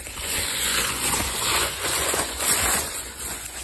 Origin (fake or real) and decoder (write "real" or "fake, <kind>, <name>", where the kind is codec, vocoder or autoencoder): fake, vocoder, Vocos